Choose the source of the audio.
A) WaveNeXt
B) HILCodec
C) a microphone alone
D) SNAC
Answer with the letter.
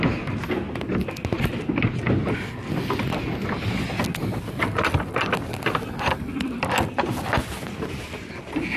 C